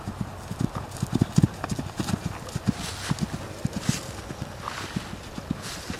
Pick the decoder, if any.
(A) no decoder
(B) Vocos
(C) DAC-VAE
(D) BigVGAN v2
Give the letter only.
A